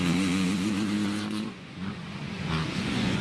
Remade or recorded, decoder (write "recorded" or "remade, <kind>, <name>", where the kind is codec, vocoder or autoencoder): remade, vocoder, Vocos